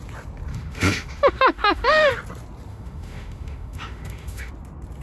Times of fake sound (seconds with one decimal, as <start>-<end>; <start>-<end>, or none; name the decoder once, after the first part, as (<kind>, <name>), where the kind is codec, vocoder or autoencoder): 0.5-2.1 (autoencoder, DAC-VAE); 2.7-4.5